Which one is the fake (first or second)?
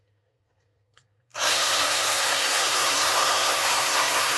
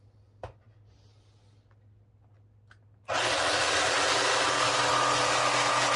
first